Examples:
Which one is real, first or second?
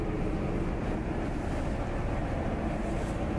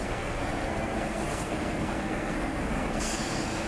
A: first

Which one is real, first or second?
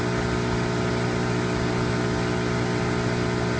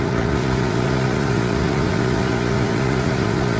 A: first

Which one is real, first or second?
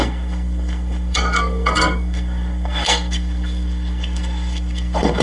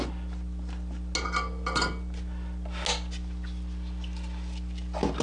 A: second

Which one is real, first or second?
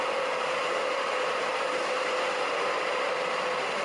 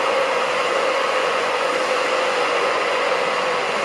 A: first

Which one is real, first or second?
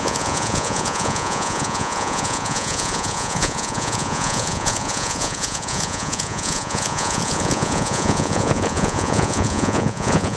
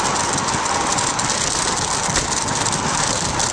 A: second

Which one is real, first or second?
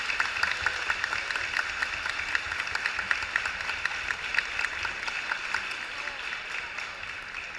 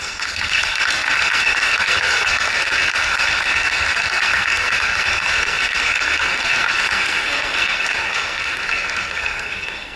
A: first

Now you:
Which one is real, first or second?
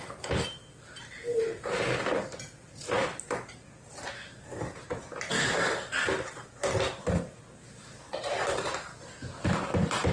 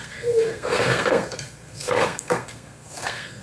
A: first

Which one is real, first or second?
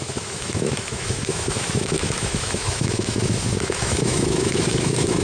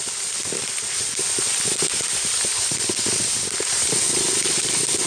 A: second